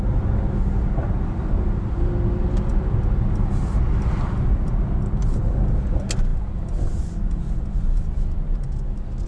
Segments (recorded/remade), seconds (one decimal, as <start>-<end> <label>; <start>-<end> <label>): 0.0-9.3 recorded